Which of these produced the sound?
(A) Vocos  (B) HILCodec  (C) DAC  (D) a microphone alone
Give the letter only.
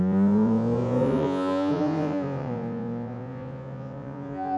A